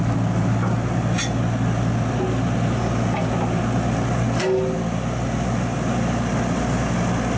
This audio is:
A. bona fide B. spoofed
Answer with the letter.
A